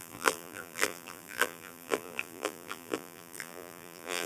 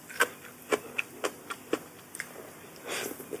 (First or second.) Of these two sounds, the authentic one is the second